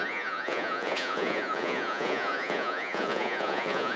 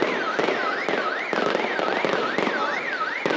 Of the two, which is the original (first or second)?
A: second